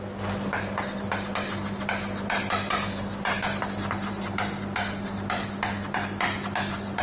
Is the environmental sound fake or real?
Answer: real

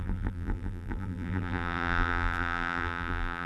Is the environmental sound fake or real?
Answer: fake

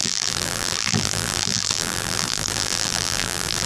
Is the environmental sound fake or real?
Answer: fake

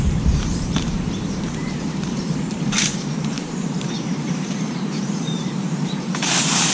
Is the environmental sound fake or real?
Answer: fake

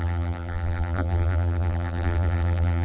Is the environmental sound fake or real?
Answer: fake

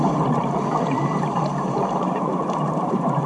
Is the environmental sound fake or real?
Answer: fake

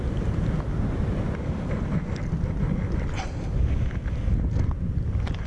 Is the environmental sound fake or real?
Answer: real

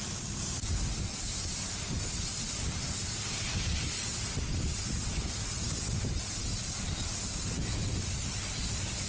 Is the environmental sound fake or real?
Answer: fake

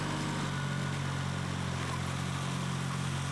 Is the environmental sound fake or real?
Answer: real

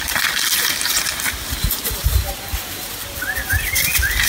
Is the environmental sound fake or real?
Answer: real